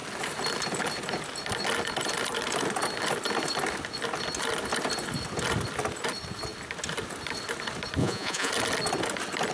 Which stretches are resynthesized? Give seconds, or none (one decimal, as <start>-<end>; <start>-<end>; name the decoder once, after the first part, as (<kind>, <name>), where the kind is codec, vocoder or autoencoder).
8.0-8.5 (vocoder, Vocos)